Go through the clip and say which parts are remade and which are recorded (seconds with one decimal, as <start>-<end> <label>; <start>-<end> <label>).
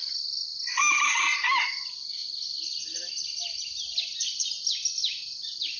0.0-5.8 recorded